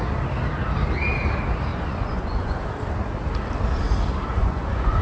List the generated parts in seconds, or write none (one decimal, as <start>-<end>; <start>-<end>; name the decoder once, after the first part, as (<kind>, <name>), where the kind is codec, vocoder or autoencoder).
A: 1.7-2.6 (vocoder, Vocos); 4.4-5.0